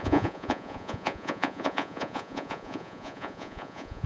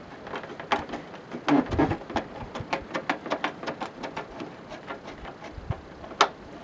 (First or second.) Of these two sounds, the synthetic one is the first